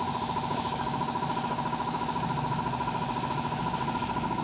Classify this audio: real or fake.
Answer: fake